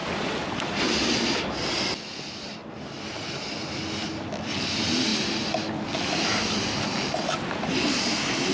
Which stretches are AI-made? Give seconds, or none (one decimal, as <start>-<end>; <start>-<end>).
none